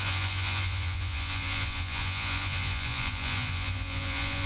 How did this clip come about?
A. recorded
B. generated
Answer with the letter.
B